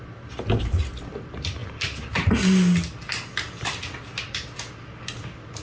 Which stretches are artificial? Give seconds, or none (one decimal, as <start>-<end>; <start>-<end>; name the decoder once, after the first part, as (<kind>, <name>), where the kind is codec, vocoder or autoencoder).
none